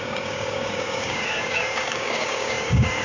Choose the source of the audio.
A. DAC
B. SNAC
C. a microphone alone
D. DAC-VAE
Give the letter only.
A